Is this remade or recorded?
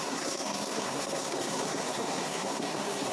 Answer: remade